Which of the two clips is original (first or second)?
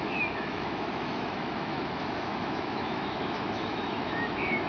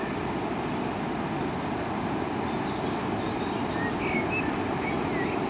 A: second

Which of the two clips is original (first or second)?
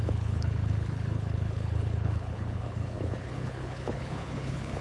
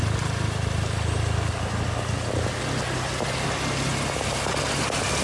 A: second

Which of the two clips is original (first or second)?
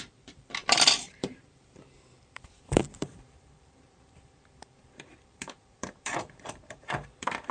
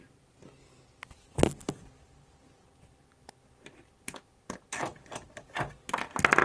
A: second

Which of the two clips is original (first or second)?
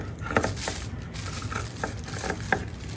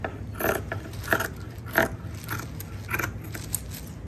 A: second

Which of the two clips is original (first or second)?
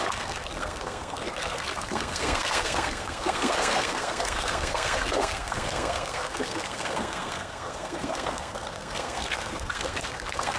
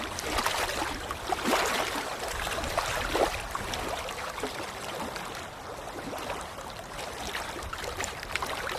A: second